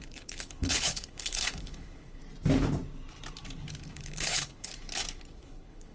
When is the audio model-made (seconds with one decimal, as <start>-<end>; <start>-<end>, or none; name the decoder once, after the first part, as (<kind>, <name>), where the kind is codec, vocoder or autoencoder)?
0.0-2.2 (codec, HILCodec); 3.9-4.7; 5.4-5.9